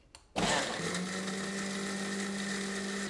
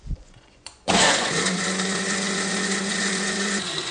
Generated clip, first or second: second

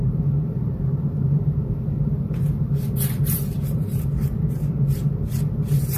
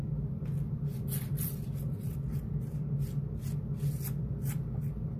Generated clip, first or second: first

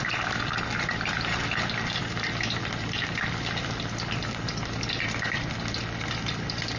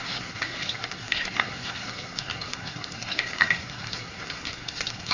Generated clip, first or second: second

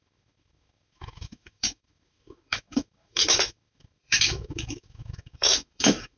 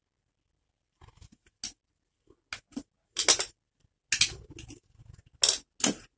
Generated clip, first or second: first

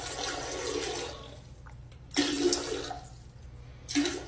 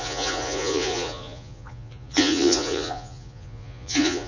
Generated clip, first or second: second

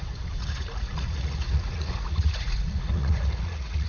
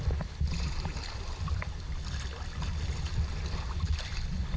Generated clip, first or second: first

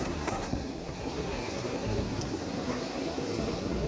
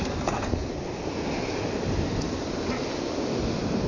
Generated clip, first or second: first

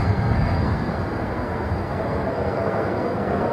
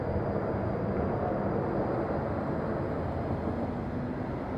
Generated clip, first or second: first